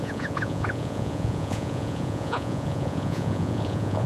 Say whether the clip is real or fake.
fake